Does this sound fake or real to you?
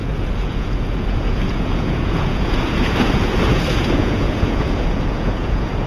fake